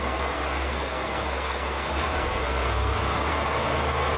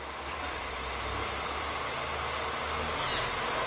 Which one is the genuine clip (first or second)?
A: second